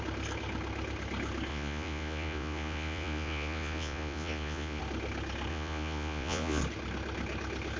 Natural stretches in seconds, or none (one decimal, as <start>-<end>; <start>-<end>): 0.0-1.5; 4.8-5.5; 6.6-7.8